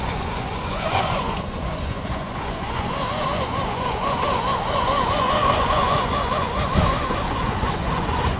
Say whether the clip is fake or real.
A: fake